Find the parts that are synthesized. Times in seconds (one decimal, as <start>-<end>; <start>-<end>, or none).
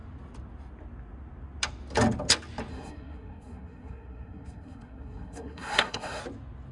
2.7-6.2